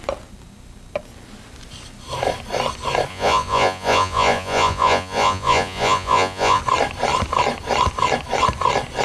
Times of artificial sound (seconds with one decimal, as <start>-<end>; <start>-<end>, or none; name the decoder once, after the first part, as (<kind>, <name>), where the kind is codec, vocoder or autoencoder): 3.1-6.6 (vocoder, Vocos)